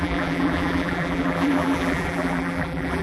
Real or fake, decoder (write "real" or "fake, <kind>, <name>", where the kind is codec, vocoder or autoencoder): fake, vocoder, BigVGAN v2